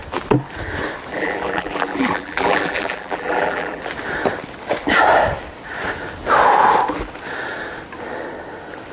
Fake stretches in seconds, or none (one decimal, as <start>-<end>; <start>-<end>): 1.1-3.8